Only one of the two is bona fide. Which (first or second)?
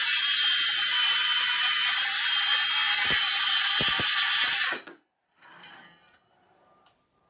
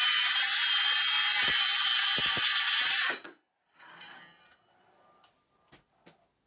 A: second